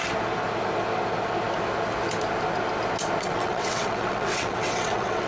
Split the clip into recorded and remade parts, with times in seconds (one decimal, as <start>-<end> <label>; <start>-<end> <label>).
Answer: 0.0-3.2 recorded; 3.2-5.3 remade